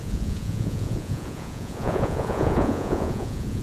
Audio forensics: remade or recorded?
remade